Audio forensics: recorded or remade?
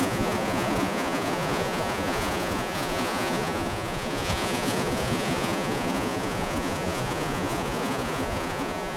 remade